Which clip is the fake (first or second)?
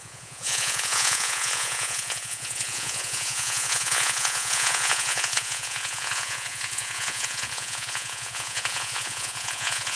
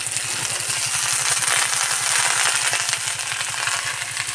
first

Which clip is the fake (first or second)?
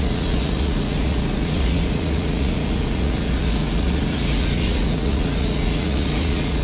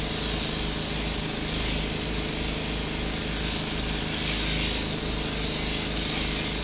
first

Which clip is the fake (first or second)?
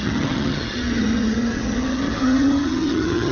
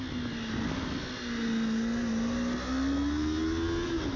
first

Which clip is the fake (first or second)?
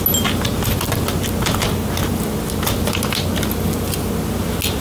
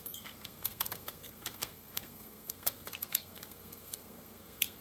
second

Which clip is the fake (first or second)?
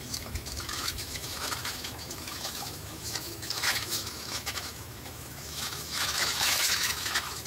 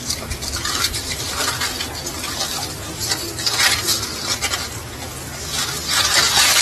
first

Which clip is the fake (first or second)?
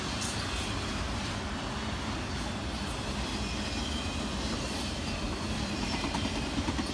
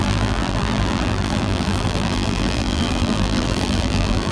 second